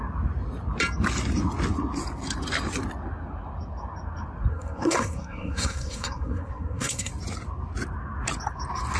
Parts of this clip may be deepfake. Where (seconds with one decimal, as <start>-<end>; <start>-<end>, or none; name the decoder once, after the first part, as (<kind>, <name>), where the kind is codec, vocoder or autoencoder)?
4.5-7.1 (codec, SNAC)